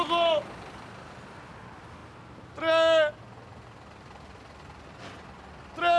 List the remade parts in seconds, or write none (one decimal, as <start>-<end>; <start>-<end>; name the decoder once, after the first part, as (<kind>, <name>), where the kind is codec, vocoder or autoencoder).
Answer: none